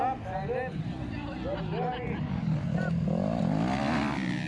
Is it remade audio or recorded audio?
recorded